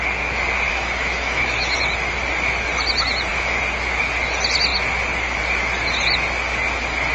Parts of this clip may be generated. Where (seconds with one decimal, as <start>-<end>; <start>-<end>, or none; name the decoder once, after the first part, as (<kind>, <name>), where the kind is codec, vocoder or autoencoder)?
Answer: 0.7-1.8 (autoencoder, DAC-VAE)

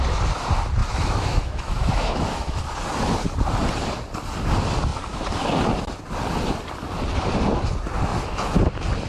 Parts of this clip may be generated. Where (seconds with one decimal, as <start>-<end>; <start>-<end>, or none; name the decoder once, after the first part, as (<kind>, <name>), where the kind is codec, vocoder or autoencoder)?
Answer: 0.8-2.6 (autoencoder, DAC-VAE)

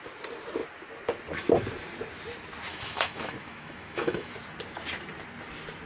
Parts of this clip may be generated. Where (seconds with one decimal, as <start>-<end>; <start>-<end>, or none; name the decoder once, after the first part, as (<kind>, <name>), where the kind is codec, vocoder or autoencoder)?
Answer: 2.7-4.3 (autoencoder, DAC-VAE)

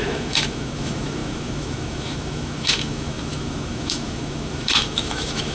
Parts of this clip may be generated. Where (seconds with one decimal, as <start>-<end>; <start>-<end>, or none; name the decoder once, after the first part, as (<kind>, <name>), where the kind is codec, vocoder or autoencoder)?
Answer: 0.0-5.5 (autoencoder, DAC-VAE)

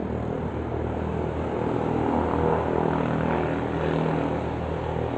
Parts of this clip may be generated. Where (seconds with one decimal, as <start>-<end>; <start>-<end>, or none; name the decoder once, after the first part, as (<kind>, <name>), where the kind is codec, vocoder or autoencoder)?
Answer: none